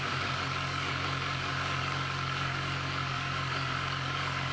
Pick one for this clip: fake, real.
fake